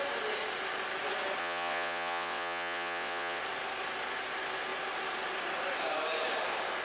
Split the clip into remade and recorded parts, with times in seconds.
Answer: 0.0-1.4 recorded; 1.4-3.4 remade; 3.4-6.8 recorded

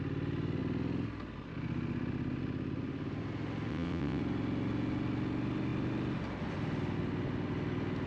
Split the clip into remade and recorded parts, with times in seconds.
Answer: 0.0-3.7 recorded; 3.7-4.2 remade; 4.2-8.1 recorded

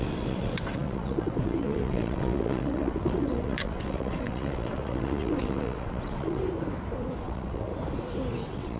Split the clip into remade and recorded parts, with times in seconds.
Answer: 0.0-6.4 remade; 6.4-7.2 recorded; 7.2-7.7 remade; 7.7-8.4 recorded; 8.4-8.8 remade

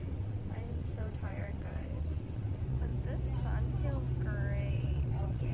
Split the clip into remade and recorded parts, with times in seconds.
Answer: 0.0-2.9 remade; 2.9-4.7 recorded; 4.7-5.5 remade

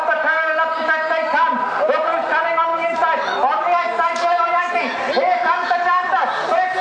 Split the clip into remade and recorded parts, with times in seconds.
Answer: 0.0-6.8 recorded

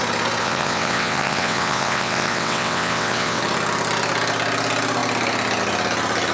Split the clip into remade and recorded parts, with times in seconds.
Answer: 0.0-0.4 recorded; 0.4-3.4 remade; 3.4-6.3 recorded

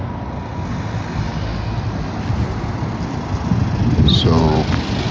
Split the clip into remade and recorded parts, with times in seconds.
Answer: 0.0-5.1 recorded

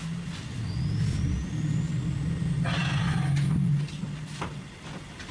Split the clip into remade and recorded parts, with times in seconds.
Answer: 0.0-5.3 recorded